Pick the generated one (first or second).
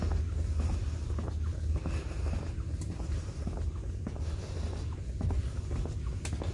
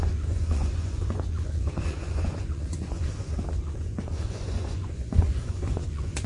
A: second